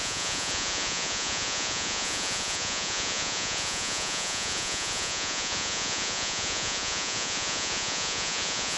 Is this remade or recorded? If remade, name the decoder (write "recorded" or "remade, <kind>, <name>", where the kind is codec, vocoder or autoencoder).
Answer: remade, vocoder, Vocos